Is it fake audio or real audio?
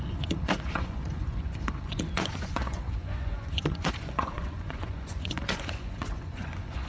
fake